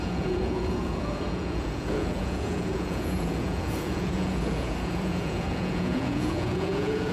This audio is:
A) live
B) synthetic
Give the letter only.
B